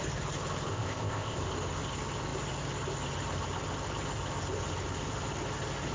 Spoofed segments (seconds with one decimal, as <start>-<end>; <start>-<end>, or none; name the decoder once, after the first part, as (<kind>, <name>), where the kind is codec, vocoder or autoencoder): 0.7-1.4 (codec, ZipCodec)